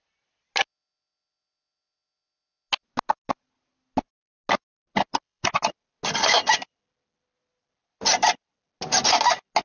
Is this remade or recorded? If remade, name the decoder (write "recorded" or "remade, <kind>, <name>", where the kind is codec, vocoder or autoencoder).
recorded